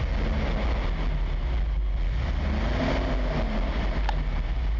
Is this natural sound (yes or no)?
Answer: yes